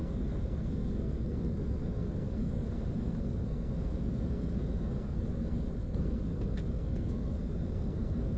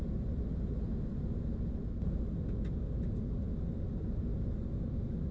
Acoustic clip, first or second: second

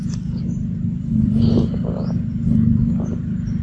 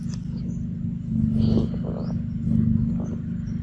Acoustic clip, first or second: second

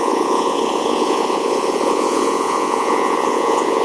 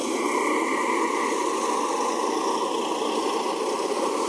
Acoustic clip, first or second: second